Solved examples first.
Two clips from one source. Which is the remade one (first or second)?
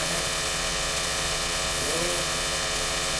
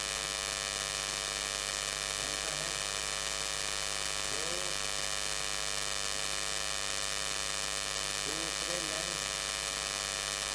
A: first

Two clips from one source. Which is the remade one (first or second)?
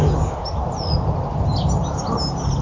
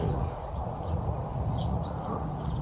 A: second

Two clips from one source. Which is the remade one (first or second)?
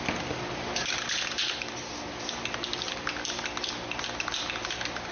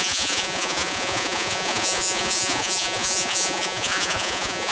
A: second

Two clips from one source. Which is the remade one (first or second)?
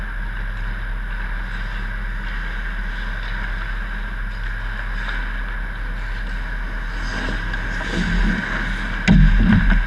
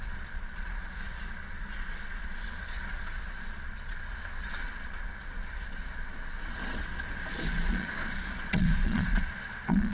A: second